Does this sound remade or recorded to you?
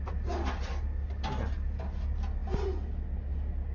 recorded